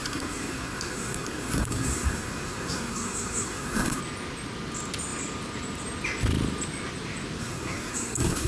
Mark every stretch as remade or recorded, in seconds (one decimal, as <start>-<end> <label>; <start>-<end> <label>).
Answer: 0.0-4.0 remade; 4.0-7.4 recorded; 7.4-8.5 remade